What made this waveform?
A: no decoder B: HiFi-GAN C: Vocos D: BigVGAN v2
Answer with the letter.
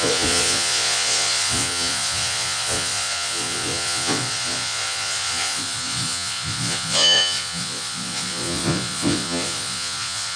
C